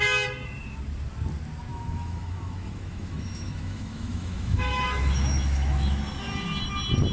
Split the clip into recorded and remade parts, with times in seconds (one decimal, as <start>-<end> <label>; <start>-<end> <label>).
0.0-1.7 recorded; 1.7-6.0 remade; 6.0-7.1 recorded